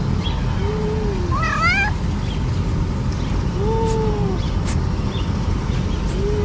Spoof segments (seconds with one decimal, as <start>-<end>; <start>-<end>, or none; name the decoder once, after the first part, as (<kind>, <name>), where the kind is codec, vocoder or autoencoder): none